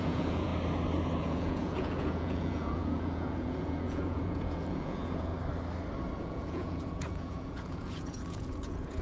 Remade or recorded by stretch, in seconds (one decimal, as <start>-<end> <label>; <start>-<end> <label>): 0.0-0.5 remade; 0.5-1.2 recorded; 1.2-5.3 remade; 5.3-6.2 recorded; 6.2-9.0 remade